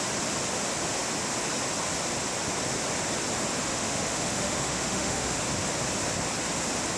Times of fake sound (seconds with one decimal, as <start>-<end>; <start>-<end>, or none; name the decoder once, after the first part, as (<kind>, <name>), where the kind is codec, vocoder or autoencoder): 3.7-5.4 (autoencoder, DAC-VAE)